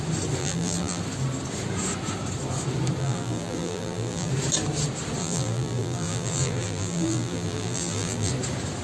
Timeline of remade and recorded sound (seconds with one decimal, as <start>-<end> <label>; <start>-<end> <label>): 0.0-0.4 recorded; 0.4-1.0 remade; 1.0-3.0 recorded; 3.0-4.3 remade; 4.3-5.2 recorded; 5.2-8.3 remade; 8.3-8.8 recorded